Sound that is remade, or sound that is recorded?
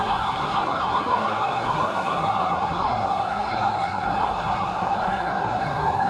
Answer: remade